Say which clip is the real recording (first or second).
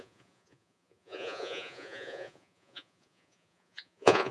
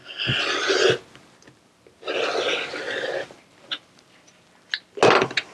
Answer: second